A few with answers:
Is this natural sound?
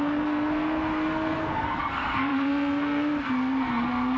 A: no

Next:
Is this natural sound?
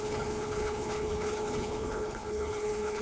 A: no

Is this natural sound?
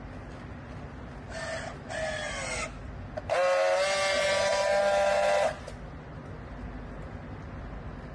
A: yes